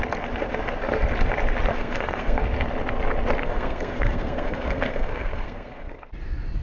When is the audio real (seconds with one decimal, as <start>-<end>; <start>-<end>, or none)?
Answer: 0.0-1.7; 2.4-3.4; 6.1-6.6